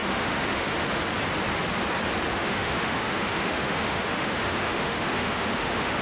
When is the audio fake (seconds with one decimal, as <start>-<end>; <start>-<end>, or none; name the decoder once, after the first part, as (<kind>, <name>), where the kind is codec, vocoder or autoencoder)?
0.0-1.0 (autoencoder, DAC-VAE); 2.3-6.0